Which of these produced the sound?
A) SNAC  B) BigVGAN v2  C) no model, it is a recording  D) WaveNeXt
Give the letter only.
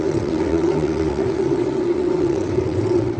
D